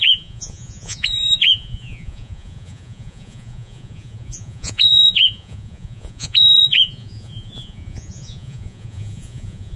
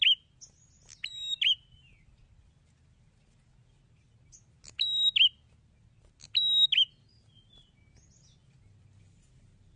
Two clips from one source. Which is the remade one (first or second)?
first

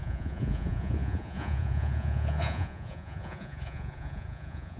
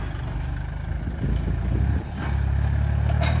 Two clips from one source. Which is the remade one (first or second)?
first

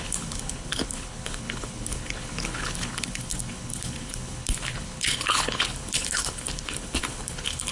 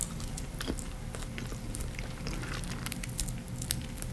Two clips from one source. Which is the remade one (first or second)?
first